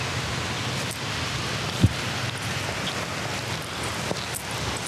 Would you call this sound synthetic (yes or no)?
no